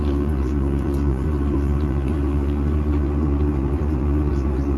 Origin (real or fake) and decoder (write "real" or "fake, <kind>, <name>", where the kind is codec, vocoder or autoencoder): fake, vocoder, Vocos